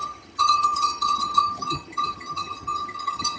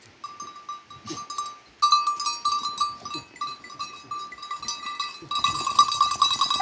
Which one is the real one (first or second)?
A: second